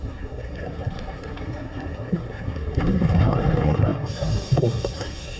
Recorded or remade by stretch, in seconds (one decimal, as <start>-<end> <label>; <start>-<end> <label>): 0.0-5.4 remade